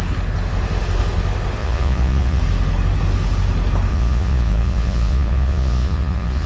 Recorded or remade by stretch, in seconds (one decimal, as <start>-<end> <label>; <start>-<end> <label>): 0.0-1.6 recorded; 1.6-2.4 remade; 2.4-3.9 recorded; 3.9-6.5 remade